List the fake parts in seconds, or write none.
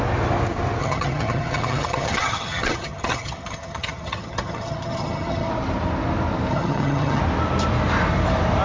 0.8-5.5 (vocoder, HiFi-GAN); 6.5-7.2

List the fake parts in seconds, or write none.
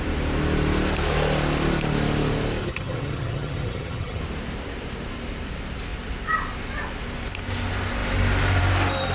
2.6-4.2 (vocoder, HiFi-GAN)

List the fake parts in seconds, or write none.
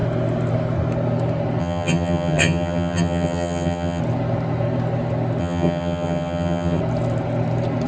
1.6-4.0 (vocoder, HiFi-GAN); 5.4-6.8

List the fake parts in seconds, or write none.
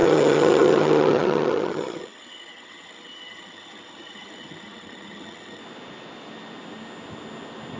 0.0-5.6 (vocoder, HiFi-GAN)